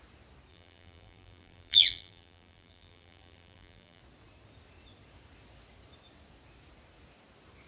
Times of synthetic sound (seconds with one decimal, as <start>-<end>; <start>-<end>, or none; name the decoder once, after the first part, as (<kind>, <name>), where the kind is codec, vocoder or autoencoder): 0.5-4.0 (vocoder, BigVGAN v2)